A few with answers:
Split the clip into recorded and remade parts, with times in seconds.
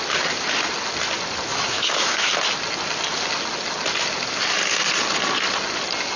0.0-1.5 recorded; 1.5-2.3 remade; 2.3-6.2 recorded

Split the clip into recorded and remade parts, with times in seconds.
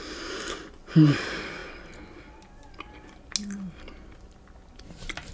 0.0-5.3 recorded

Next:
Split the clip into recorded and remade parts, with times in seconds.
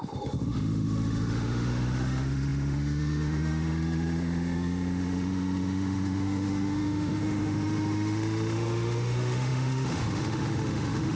0.0-11.2 remade